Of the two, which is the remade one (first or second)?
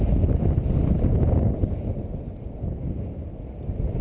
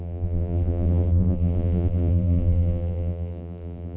second